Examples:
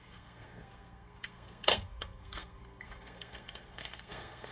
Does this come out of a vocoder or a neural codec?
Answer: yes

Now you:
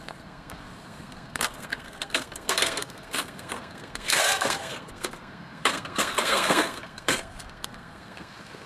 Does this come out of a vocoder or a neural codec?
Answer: yes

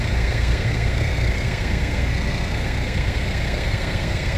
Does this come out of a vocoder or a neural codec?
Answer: yes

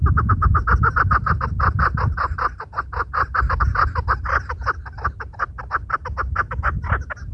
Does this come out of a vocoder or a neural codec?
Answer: no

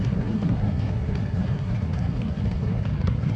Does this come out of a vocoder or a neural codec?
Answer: yes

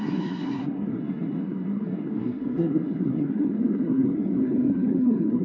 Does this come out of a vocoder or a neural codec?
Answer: yes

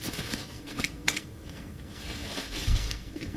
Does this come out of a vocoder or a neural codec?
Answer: yes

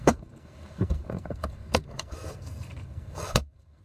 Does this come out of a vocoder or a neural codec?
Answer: yes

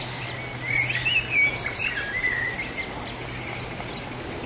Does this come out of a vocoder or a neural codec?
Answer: no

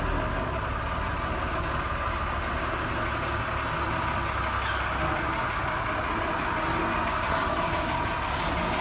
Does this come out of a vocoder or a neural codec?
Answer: no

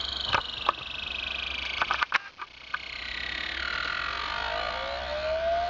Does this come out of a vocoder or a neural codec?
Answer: no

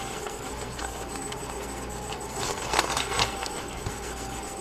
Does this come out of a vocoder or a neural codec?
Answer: yes